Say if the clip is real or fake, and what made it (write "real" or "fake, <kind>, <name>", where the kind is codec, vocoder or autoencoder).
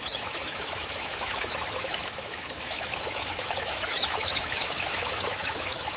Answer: fake, autoencoder, DAC-VAE